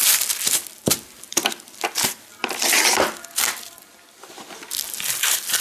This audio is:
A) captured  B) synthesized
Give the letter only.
B